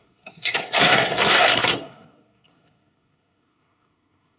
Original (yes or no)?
no